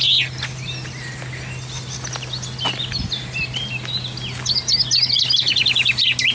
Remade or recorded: recorded